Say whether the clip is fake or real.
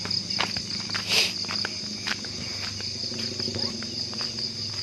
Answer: real